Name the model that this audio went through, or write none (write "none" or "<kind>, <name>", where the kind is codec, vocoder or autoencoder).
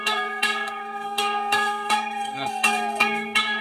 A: codec, SNAC